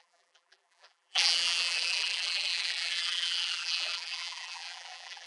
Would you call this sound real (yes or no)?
no